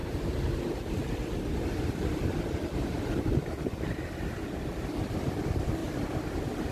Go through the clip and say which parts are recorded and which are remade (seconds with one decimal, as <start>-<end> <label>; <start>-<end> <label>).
0.0-3.6 recorded; 3.6-5.8 remade; 5.8-6.7 recorded